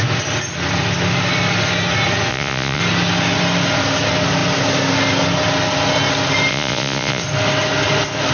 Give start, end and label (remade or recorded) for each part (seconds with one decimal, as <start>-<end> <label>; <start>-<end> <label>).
0.0-2.3 recorded; 2.3-2.8 remade; 2.8-6.5 recorded; 6.5-7.2 remade; 7.2-8.3 recorded